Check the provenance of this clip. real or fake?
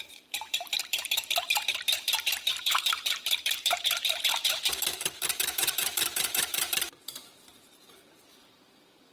fake